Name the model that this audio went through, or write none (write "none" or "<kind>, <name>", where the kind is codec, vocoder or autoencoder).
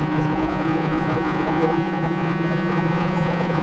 vocoder, Vocos